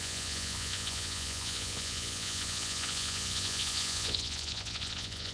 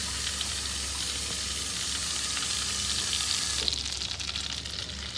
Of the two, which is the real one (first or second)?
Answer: second